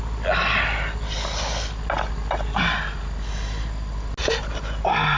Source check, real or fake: real